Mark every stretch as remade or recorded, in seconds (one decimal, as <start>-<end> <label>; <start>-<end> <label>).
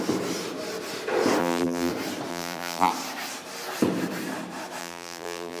0.0-1.4 recorded; 1.4-1.9 remade; 1.9-2.3 recorded; 2.3-2.9 remade; 2.9-4.8 recorded; 4.8-5.6 remade